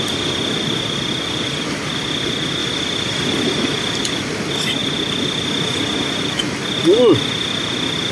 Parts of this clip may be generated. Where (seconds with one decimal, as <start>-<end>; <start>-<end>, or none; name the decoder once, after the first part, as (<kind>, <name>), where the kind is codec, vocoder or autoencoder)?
none